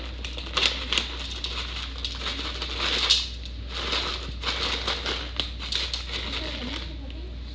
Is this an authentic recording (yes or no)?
yes